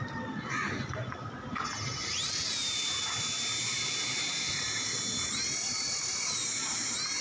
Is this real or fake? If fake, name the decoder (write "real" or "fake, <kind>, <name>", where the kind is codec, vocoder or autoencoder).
real